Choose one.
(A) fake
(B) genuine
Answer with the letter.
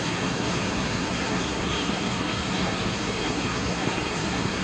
A